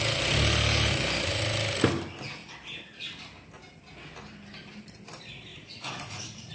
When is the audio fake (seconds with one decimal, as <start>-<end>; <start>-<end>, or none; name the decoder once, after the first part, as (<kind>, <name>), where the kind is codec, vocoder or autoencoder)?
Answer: 5.5-6.5 (vocoder, Vocos)